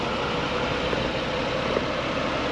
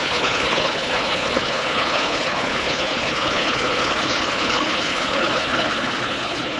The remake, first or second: second